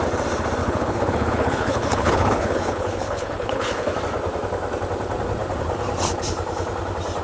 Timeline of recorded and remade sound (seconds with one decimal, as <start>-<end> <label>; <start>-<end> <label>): 0.0-0.6 recorded; 0.6-4.0 remade; 4.0-7.2 recorded